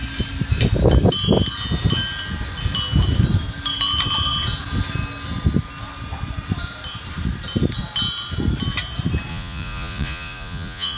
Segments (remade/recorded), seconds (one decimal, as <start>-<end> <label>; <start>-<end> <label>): 0.0-9.3 recorded; 9.3-11.0 remade